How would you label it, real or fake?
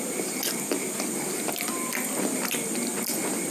real